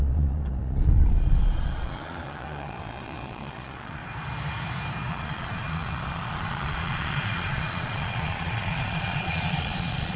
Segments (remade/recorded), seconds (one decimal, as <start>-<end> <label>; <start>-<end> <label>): 0.0-4.0 remade; 4.0-5.1 recorded; 5.1-10.2 remade